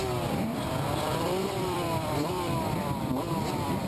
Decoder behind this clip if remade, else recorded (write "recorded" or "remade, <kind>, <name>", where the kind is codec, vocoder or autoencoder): remade, vocoder, BigVGAN v2